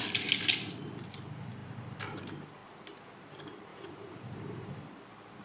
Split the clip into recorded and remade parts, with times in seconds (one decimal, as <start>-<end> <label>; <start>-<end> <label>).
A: 0.0-3.7 recorded; 3.7-4.7 remade; 4.7-5.4 recorded